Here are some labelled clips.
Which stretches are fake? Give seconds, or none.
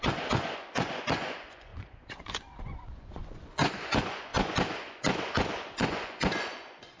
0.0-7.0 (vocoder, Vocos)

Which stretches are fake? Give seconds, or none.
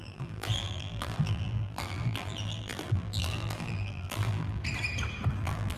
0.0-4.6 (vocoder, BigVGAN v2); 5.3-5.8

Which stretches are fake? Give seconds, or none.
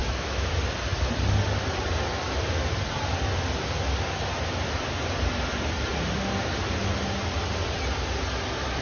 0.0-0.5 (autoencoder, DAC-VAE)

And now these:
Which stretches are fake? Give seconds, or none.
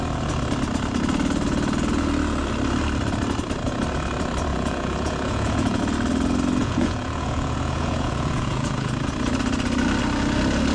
4.5-5.8 (vocoder, Vocos); 6.6-8.9